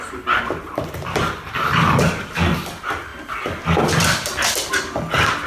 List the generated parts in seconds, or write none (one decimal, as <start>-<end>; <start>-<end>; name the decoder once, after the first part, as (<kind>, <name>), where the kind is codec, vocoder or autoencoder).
none